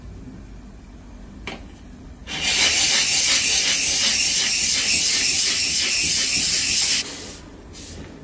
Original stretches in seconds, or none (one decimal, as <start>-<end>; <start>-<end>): 0.0-8.2